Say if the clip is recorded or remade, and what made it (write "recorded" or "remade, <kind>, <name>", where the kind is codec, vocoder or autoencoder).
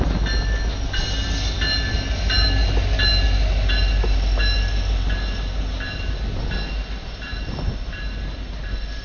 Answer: recorded